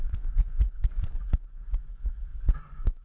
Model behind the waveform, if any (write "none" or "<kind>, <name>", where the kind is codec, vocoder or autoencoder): vocoder, Vocos